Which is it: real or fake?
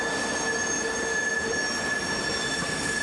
real